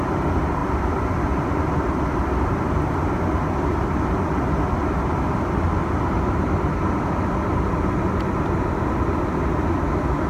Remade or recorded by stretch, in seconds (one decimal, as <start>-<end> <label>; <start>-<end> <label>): 0.0-10.3 recorded